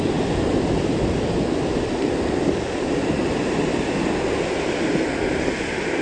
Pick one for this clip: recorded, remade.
recorded